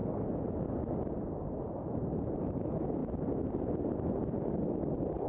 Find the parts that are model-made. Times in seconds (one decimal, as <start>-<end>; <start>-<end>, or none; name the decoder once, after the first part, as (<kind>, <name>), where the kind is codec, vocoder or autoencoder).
3.0-5.3 (vocoder, BigVGAN v2)